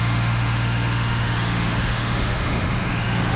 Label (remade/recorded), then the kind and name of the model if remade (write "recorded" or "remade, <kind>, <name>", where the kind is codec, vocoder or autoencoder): remade, autoencoder, DAC-VAE